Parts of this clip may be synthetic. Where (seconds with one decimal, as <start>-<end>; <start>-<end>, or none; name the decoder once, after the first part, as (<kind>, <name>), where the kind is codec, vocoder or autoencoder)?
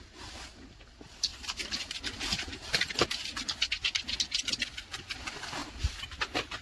1.3-2.8 (vocoder, BigVGAN v2); 5.6-6.6